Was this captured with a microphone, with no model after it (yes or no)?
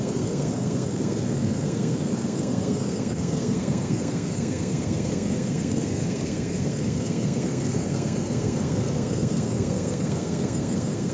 no